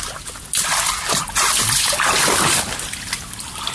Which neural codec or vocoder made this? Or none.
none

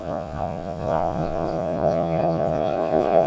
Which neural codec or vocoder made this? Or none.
vocoder, Vocos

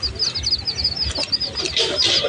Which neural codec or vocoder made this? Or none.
none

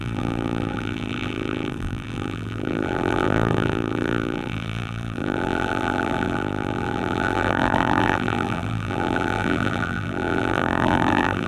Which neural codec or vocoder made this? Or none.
vocoder, BigVGAN v2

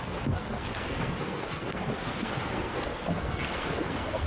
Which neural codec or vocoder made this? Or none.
codec, SNAC